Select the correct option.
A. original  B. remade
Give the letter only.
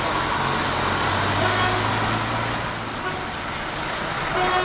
A